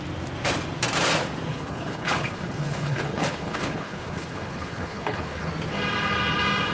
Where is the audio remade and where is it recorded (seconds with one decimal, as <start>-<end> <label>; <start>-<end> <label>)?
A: 0.0-1.5 recorded; 1.5-5.5 remade; 5.5-6.7 recorded